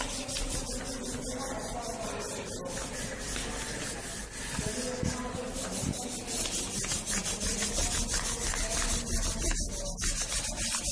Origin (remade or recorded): recorded